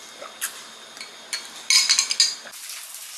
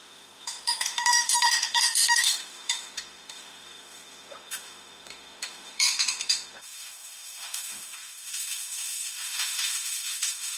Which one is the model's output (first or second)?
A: second